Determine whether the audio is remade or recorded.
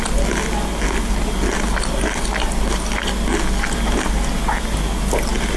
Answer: recorded